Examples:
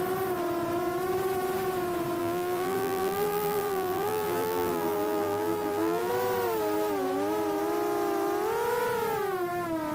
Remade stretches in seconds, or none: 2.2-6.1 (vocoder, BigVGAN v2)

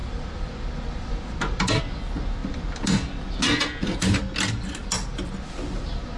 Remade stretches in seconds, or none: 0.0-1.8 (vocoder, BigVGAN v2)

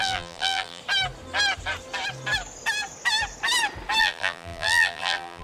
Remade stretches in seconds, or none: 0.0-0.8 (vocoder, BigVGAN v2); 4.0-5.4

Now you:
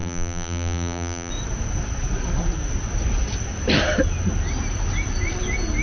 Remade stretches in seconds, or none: 0.0-1.3 (vocoder, BigVGAN v2)

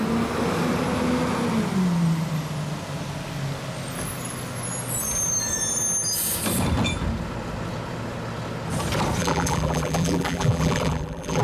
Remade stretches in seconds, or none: 9.2-11.4 (vocoder, BigVGAN v2)